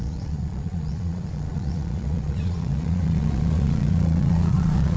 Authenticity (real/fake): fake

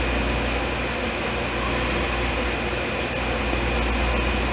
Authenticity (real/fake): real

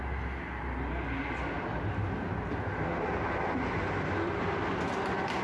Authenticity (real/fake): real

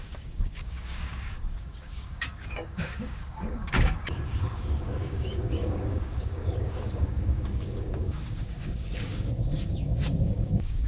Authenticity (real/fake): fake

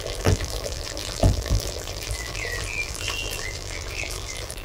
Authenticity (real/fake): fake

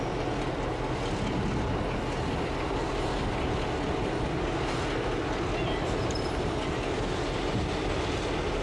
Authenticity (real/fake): real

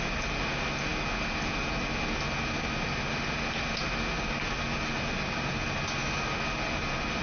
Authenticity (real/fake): real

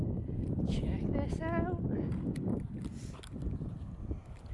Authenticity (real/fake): real